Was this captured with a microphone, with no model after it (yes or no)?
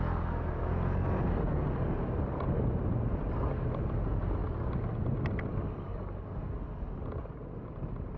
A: yes